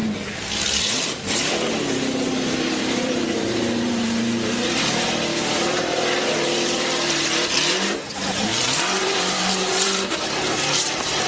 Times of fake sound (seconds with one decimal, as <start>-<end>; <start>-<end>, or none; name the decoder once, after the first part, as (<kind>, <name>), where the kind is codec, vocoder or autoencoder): 0.8-8.5 (vocoder, BigVGAN v2); 9.0-11.3

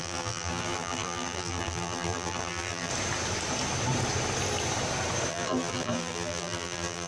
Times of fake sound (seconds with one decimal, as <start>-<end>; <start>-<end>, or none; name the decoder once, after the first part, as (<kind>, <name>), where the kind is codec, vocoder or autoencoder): 0.0-2.9 (vocoder, BigVGAN v2); 5.3-7.1